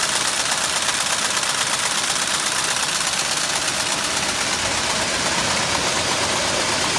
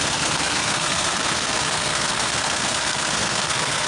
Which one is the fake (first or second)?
second